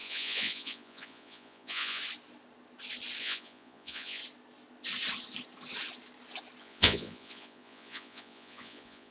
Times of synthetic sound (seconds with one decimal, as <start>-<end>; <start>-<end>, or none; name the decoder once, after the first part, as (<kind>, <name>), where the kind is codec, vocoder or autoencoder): 0.0-2.0 (vocoder, Vocos); 3.2-4.2; 6.6-9.1